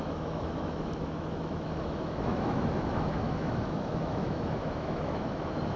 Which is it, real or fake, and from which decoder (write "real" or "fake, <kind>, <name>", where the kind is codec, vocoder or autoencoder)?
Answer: fake, autoencoder, DAC-VAE